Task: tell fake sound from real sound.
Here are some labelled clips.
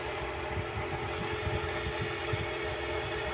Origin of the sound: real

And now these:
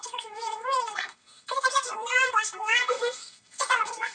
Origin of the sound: fake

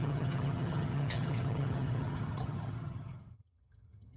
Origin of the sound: fake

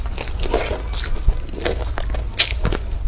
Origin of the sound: real